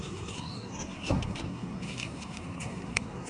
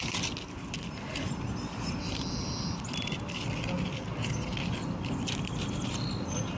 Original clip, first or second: second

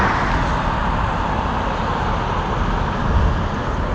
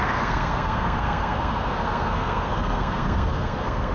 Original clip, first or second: first